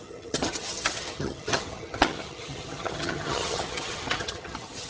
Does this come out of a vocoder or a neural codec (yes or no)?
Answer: yes